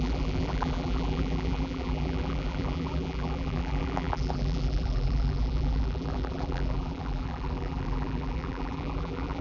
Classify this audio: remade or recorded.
remade